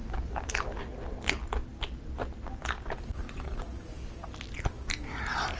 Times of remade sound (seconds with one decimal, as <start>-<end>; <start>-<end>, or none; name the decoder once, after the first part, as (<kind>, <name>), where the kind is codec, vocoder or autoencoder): 0.0-0.8 (vocoder, BigVGAN v2)